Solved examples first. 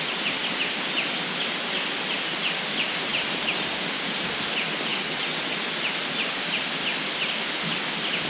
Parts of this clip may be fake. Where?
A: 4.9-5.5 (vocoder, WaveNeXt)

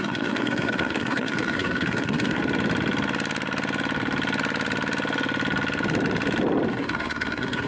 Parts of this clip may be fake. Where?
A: 0.0-2.4 (codec, SNAC); 6.7-7.7

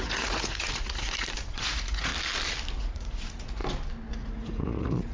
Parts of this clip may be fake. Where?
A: 0.0-2.1 (vocoder, Vocos); 2.8-3.6; 4.1-5.1

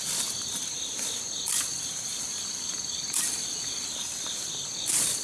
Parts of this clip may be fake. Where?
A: none